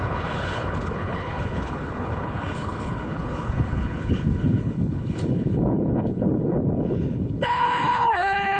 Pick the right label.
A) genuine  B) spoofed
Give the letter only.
B